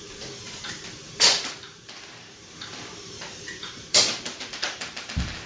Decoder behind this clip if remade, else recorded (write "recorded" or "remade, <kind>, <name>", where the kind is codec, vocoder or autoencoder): remade, vocoder, BigVGAN v2